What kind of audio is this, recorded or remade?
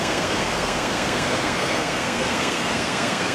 remade